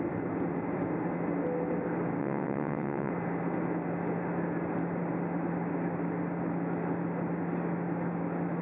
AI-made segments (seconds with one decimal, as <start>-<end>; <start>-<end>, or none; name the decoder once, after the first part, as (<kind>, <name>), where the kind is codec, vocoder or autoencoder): 2.2-3.1 (vocoder, WaveNeXt)